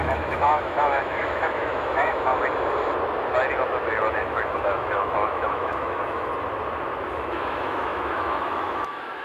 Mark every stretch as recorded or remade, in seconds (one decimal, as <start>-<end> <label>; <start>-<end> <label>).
0.0-2.3 remade; 2.3-4.1 recorded; 4.1-6.3 remade; 6.3-7.1 recorded; 7.1-9.2 remade